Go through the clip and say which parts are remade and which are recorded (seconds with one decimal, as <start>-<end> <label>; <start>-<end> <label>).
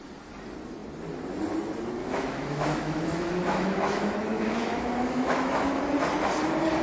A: 0.0-2.0 recorded; 2.0-5.8 remade; 5.8-6.8 recorded